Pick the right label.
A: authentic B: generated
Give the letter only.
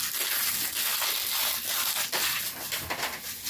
A